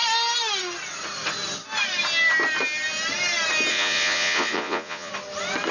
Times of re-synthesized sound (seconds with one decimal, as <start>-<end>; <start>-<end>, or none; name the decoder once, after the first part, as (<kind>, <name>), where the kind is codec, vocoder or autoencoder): 3.7-5.1 (vocoder, Vocos)